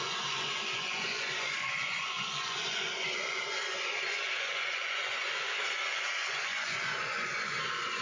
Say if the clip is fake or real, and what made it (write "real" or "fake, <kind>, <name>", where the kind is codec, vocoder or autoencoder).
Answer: fake, vocoder, Vocos